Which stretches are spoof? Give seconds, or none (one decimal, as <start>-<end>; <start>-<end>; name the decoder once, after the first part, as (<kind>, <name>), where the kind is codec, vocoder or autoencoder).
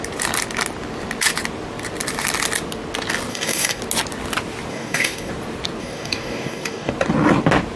3.3-3.8 (codec, DAC); 4.7-5.3; 5.8-6.9